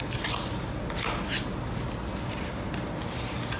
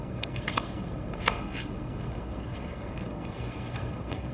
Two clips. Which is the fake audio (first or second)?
second